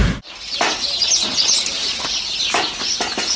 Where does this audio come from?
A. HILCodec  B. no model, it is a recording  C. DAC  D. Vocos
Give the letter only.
B